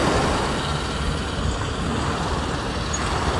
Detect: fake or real real